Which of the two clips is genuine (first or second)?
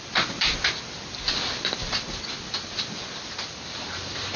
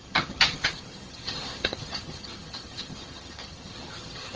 first